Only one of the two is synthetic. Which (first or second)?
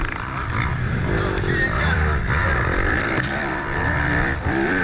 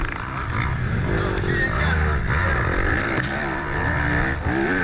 first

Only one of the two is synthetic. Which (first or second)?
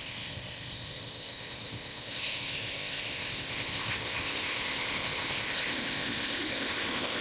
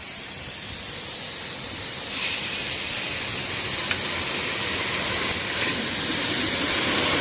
first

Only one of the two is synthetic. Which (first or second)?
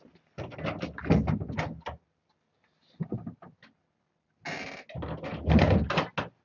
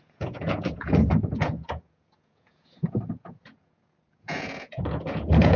second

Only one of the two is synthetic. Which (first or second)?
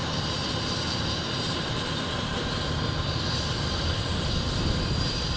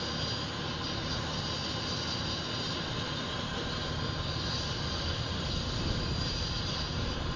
first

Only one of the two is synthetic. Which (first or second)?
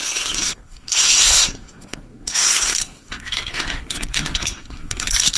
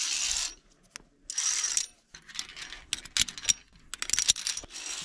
first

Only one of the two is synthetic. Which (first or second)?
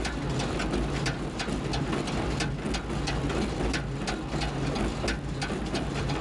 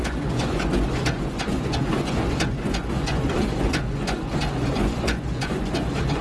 second